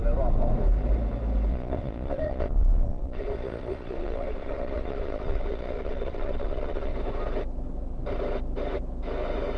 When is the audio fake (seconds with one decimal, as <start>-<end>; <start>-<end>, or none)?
1.5-6.9